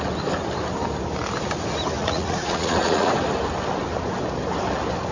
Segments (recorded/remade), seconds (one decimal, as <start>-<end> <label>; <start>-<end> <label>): 0.0-2.0 recorded; 2.0-3.1 remade; 3.1-5.1 recorded

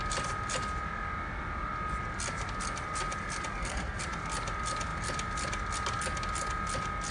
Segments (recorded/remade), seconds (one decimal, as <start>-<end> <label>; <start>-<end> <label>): 0.0-3.5 recorded; 3.5-4.0 remade; 4.0-7.1 recorded

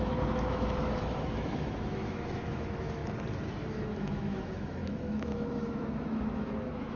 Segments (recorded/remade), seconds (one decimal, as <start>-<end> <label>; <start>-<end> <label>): 0.0-3.0 remade; 3.0-3.7 recorded; 3.7-7.0 remade

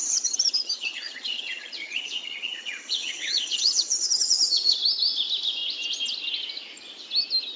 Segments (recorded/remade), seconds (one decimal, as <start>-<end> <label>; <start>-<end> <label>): 0.0-4.8 remade; 4.8-7.6 recorded